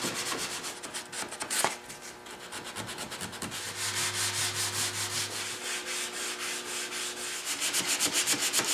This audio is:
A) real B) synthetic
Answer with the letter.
A